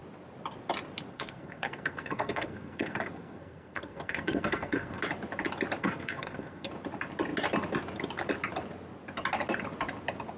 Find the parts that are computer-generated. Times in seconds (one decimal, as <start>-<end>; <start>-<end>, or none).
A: 1.1-5.0; 5.8-6.7